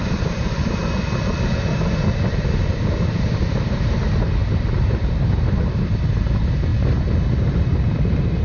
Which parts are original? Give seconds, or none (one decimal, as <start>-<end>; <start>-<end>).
0.8-2.3